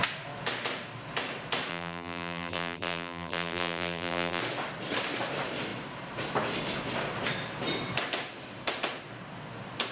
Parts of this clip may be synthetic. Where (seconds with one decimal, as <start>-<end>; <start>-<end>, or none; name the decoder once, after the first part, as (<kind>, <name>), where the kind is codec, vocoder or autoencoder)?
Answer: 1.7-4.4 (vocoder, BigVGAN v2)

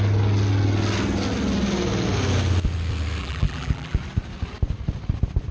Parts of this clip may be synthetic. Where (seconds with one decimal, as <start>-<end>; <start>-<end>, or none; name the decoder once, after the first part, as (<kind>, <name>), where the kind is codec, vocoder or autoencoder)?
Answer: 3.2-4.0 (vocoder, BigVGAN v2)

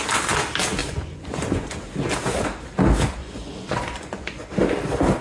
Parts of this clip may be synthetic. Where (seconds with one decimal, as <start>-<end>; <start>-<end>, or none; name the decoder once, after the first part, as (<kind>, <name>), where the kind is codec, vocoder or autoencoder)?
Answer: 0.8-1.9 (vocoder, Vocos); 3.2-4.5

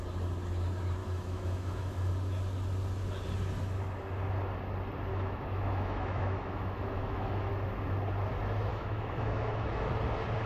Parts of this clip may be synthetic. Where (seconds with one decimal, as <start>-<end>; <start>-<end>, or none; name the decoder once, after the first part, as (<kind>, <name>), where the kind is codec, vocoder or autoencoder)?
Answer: 1.0-2.1 (autoencoder, DAC-VAE); 5.1-7.5; 8.7-9.9